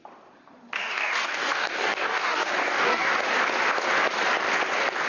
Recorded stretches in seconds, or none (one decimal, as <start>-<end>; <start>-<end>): 0.0-0.8; 3.1-5.1